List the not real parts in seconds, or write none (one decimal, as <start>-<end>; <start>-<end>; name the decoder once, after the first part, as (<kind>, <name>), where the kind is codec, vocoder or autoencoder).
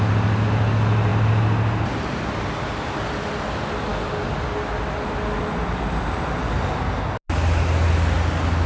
none